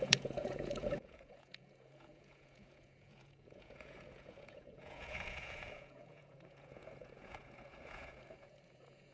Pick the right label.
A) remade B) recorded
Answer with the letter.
A